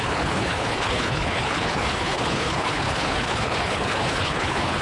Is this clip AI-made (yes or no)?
yes